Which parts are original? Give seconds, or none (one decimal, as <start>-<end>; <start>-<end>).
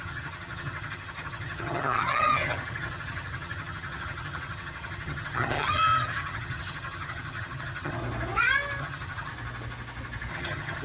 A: 8.0-8.8; 9.3-10.3